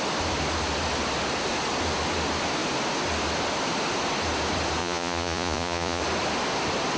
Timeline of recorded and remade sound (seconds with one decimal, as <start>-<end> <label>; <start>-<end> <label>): 0.0-4.8 recorded; 4.8-6.0 remade; 6.0-7.0 recorded